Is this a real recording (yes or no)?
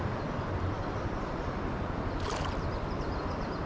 yes